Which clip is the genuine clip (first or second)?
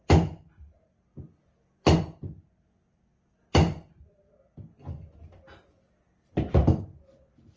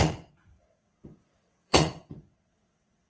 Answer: first